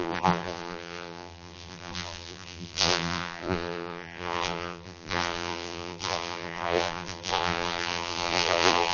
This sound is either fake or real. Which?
fake